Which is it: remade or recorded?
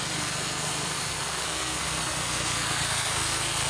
remade